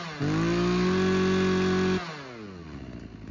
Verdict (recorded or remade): recorded